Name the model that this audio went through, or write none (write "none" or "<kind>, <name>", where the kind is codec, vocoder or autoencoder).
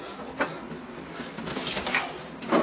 none